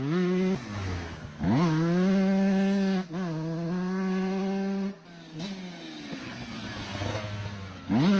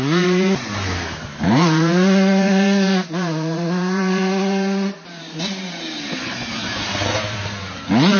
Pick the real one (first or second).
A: first